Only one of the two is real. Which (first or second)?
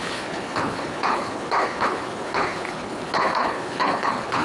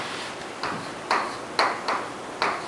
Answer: second